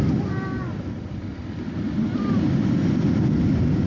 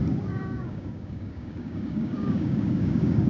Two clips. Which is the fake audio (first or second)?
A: second